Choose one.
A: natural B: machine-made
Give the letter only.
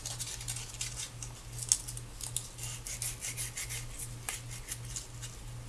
A